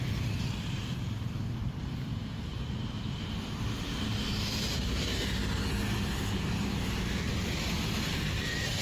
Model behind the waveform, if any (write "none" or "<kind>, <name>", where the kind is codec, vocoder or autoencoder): vocoder, BigVGAN v2